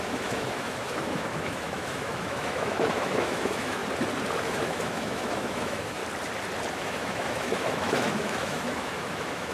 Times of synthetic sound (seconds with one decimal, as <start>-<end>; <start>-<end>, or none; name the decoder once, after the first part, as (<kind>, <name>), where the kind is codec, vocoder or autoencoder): 0.0-3.8 (autoencoder, DAC-VAE); 4.4-6.0; 6.7-9.5